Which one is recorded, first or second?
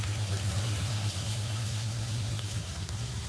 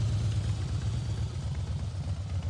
second